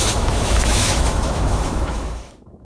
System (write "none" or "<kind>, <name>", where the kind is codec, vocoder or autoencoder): autoencoder, DAC-VAE